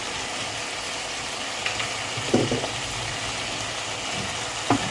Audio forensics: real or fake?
real